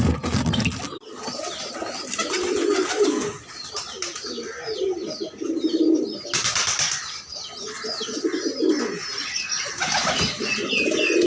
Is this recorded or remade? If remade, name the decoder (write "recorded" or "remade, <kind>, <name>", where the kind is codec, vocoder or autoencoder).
recorded